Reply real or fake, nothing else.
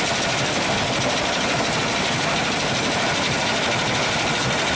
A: real